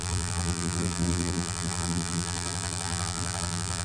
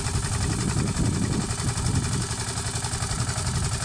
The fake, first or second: first